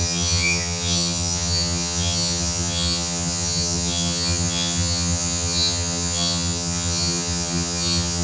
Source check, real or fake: fake